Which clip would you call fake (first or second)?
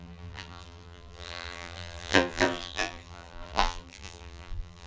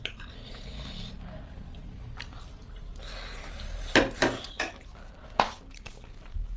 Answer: first